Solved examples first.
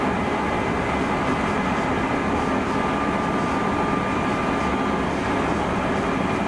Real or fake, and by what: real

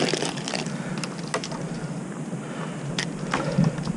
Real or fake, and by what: real